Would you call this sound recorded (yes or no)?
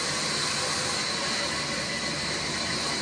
yes